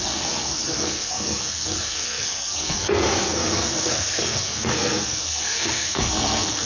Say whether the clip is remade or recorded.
remade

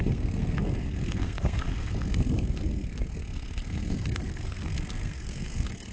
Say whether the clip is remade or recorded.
remade